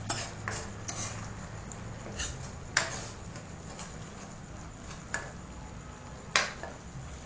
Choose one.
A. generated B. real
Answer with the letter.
B